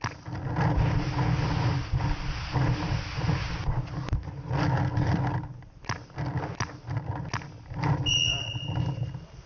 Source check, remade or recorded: recorded